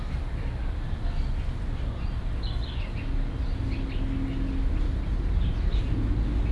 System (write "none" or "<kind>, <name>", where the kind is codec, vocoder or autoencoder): none